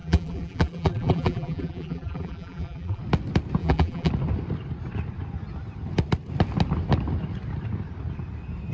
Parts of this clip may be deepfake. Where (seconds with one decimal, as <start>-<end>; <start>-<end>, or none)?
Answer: 0.0-3.0; 3.6-4.1